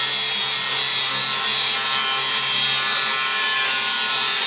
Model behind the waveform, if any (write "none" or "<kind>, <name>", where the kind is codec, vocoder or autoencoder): none